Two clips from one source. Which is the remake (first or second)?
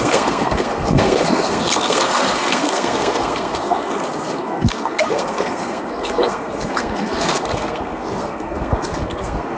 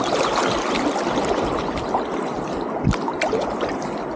first